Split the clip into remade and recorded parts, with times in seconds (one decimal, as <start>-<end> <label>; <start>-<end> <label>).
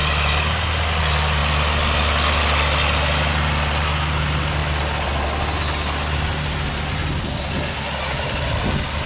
0.0-9.1 recorded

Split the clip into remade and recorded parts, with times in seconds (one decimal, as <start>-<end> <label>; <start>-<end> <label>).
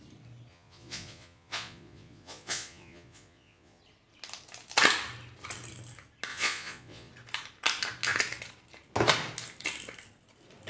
0.0-0.5 recorded; 0.5-3.8 remade; 3.8-6.3 recorded; 6.3-7.1 remade; 7.1-10.7 recorded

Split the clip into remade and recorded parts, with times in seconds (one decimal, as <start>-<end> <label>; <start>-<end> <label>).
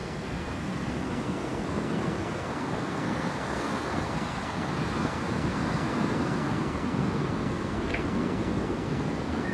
0.0-9.5 remade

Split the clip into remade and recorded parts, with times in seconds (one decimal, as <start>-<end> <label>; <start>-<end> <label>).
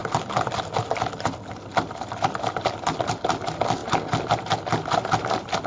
0.0-5.7 recorded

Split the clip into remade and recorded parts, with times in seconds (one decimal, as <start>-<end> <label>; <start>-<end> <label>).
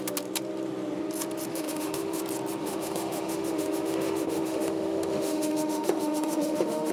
0.0-1.5 recorded; 1.5-2.2 remade; 2.2-2.6 recorded; 2.6-6.9 remade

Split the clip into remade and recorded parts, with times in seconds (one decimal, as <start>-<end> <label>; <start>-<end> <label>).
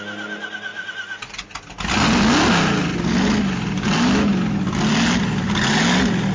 0.0-6.3 recorded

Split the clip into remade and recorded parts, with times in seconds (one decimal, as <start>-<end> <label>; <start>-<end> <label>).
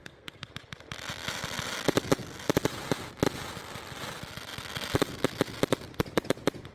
0.0-0.5 remade; 0.5-6.7 recorded